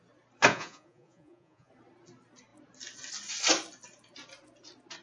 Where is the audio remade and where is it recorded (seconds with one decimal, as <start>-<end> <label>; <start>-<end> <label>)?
0.0-0.5 recorded; 0.5-1.7 remade; 1.7-5.0 recorded